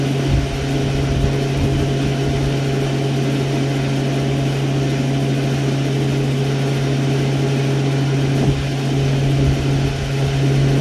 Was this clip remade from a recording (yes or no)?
no